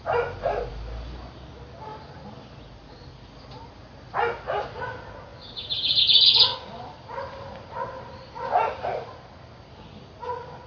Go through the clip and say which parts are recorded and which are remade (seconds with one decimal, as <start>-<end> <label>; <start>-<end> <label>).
0.0-0.7 recorded; 0.7-1.5 remade; 1.5-1.9 recorded; 1.9-4.0 remade; 4.0-5.3 recorded; 5.3-6.0 remade; 6.0-6.5 recorded; 6.5-9.6 remade; 9.6-10.7 recorded